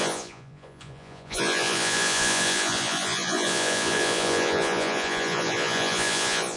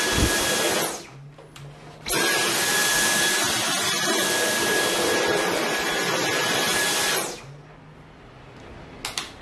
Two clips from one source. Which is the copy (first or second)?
first